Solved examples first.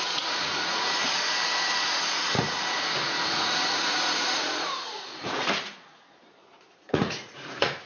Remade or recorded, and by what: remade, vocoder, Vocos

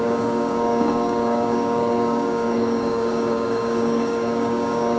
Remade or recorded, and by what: remade, codec, DAC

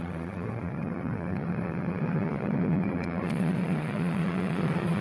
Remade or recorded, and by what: remade, vocoder, Vocos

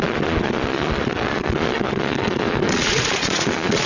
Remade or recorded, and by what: remade, vocoder, Vocos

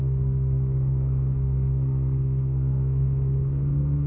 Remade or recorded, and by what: remade, codec, SNAC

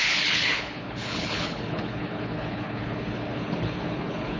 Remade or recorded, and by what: remade, codec, HILCodec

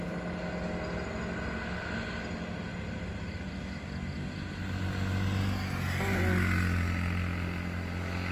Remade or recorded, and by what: recorded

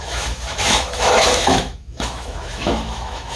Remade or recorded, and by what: remade, autoencoder, DAC-VAE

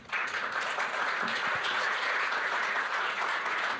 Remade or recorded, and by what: remade, vocoder, Vocos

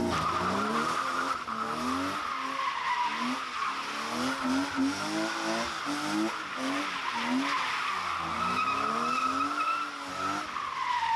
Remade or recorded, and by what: recorded